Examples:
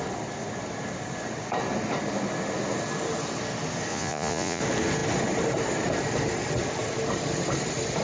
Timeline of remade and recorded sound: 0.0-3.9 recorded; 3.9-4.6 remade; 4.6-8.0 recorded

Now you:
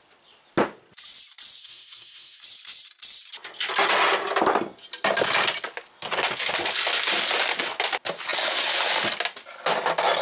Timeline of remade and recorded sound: 0.0-1.6 recorded; 1.6-2.4 remade; 2.4-10.2 recorded